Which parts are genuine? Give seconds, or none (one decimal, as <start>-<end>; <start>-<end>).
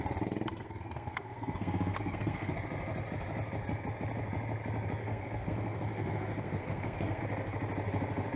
0.0-0.5; 2.5-5.0; 7.2-8.4